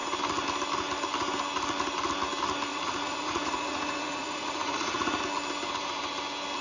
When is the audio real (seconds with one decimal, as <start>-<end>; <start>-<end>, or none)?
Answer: 0.0-2.7; 5.2-6.6